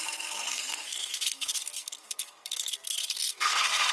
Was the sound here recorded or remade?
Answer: remade